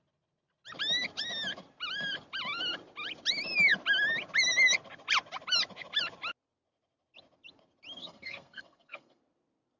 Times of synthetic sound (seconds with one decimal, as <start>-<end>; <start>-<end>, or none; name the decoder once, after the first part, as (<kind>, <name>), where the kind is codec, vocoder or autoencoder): 8.0-9.2 (codec, SNAC)